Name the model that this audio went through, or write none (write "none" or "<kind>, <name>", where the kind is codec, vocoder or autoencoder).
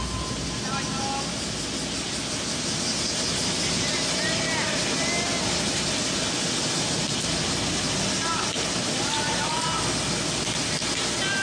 none